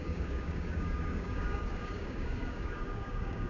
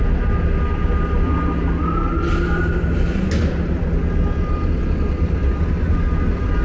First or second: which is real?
second